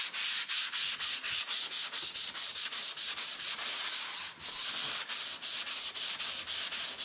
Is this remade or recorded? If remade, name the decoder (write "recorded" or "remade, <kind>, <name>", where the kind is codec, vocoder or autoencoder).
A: recorded